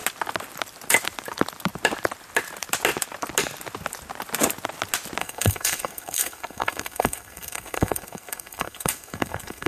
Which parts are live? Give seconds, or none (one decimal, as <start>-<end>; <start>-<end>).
0.0-5.2